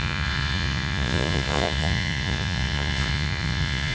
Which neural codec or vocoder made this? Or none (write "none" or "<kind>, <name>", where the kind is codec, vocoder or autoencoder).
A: vocoder, Vocos